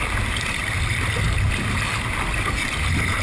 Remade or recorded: recorded